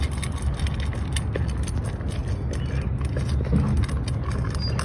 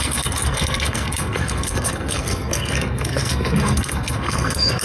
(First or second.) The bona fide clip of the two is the first